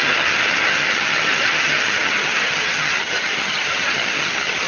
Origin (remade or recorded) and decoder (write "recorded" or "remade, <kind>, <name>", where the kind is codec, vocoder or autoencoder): remade, vocoder, HiFi-GAN